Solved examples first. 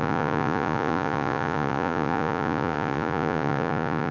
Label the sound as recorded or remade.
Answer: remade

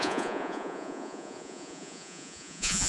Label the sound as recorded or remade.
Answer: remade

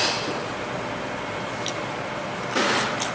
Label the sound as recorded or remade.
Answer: recorded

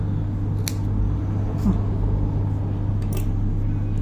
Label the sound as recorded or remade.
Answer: recorded